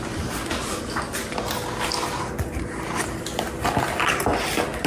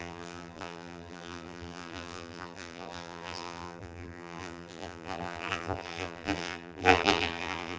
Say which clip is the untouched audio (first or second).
first